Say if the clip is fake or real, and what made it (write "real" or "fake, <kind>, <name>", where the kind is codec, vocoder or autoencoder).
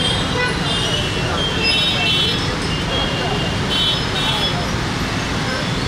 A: real